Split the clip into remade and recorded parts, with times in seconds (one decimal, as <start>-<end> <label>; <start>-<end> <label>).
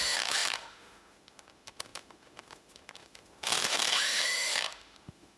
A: 0.0-5.4 remade